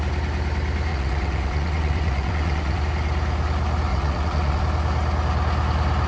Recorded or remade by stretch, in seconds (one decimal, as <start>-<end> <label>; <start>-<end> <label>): 0.0-0.9 recorded; 0.9-2.8 remade; 2.8-3.9 recorded; 3.9-4.6 remade; 4.6-6.1 recorded